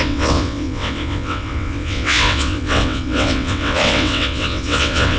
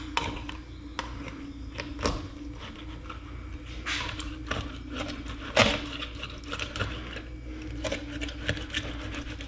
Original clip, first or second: second